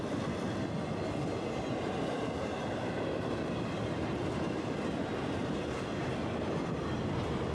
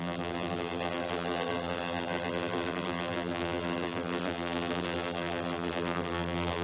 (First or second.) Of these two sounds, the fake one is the second